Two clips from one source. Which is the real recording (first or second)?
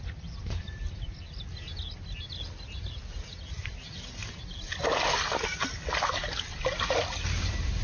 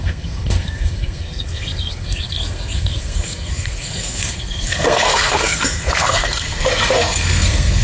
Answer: first